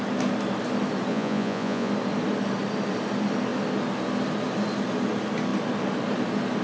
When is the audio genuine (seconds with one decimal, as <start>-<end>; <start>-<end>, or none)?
0.0-1.1; 1.9-6.6